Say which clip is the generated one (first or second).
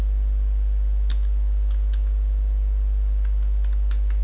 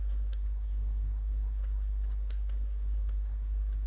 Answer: second